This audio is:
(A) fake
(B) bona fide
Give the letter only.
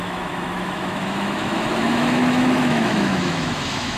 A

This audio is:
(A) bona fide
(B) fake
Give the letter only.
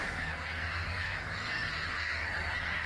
B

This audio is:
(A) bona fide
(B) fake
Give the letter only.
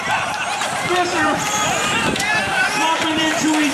B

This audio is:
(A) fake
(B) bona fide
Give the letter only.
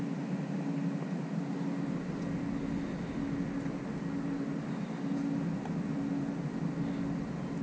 B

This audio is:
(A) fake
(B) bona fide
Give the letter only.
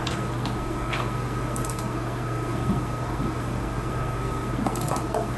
A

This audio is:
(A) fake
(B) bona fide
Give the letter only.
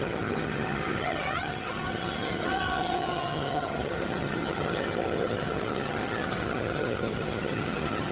A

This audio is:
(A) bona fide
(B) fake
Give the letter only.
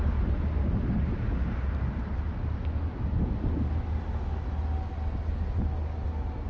A